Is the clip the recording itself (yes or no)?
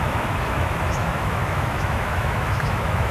no